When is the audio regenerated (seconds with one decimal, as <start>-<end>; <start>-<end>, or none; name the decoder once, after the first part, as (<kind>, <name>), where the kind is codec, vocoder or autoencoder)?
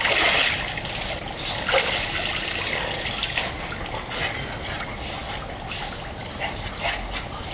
none